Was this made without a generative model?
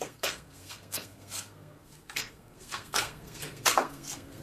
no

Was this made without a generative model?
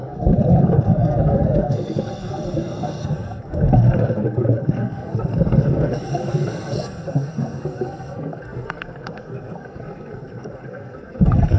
no